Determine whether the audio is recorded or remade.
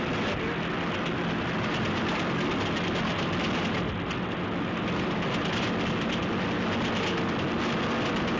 recorded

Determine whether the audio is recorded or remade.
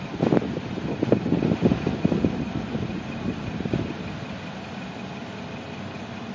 remade